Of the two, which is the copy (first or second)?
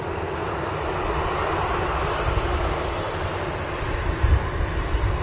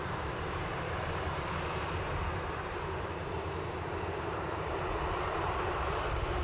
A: second